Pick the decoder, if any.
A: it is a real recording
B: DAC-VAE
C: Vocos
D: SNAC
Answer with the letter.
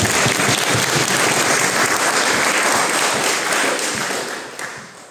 A